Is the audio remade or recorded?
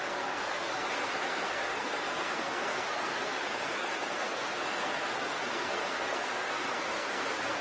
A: remade